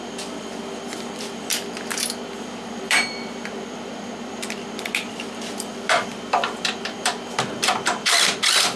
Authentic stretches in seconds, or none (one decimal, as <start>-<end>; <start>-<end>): none